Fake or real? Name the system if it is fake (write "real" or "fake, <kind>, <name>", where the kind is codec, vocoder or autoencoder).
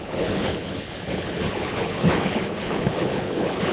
fake, codec, HILCodec